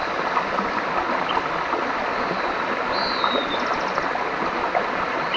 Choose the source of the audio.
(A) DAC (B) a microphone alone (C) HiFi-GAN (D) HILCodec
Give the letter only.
B